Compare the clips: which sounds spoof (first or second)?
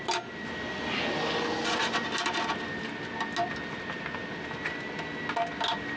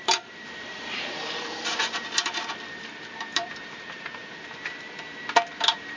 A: second